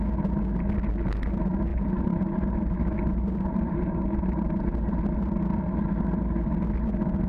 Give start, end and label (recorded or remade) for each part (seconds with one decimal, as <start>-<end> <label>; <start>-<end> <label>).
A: 0.0-1.7 recorded; 1.7-5.0 remade; 5.0-7.3 recorded